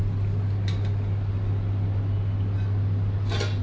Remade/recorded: recorded